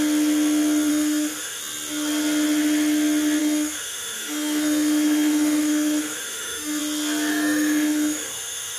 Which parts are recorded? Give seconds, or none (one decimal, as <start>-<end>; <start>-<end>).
0.0-0.9; 1.6-3.4; 6.8-7.3